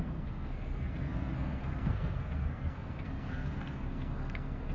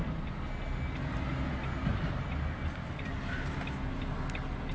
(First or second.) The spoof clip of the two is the first